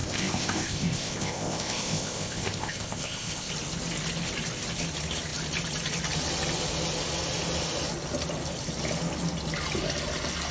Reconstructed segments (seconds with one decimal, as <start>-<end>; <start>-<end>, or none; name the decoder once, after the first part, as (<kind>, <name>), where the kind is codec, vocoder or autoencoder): 0.0-3.5 (codec, ZipCodec)